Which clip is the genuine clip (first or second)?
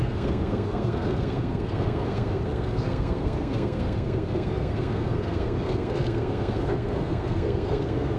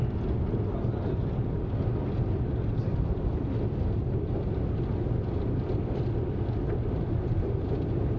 second